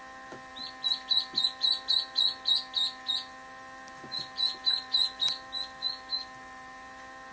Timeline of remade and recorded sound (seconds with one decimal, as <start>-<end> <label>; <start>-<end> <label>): 0.0-7.3 recorded